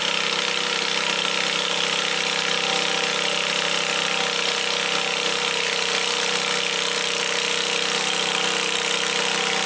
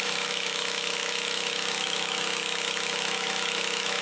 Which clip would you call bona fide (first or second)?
first